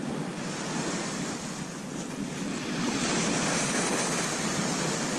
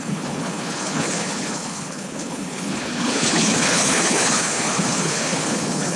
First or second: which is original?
first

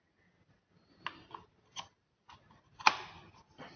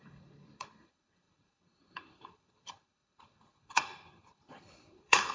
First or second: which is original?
first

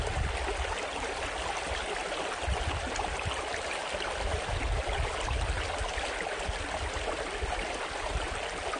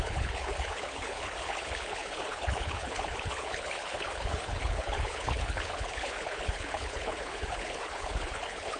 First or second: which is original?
first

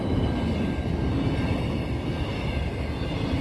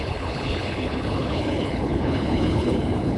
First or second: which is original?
first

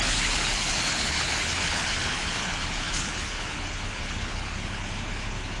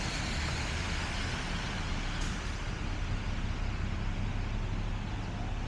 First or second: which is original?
second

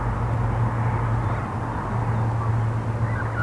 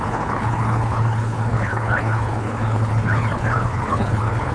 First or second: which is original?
first